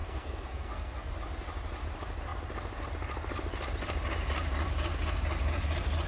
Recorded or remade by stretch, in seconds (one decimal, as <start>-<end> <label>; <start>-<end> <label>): 0.0-1.1 remade; 1.1-6.1 recorded